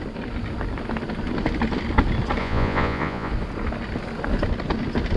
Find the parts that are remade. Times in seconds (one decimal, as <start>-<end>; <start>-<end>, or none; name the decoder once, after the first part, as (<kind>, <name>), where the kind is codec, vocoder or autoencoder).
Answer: 2.4-3.3 (vocoder, Vocos)